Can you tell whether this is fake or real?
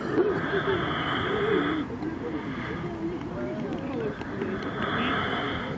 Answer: real